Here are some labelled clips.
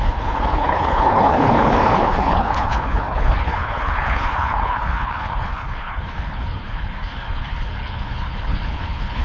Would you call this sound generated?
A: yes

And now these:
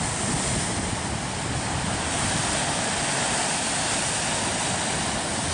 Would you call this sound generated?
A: no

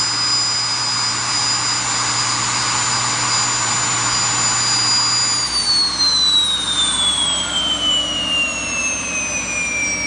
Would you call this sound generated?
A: no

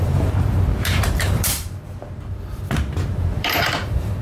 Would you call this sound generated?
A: yes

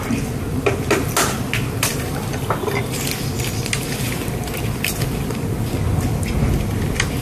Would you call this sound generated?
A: yes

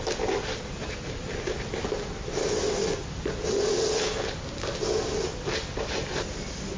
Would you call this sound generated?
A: no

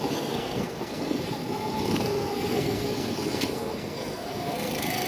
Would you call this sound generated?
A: yes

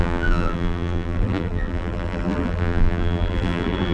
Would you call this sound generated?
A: yes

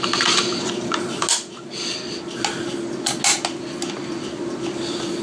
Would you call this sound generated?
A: no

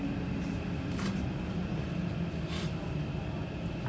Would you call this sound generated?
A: no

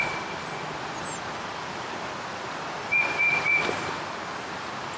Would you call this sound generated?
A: no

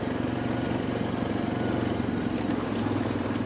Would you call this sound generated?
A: yes